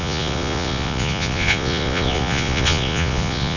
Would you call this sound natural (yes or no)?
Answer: no